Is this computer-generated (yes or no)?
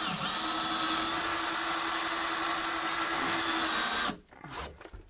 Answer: no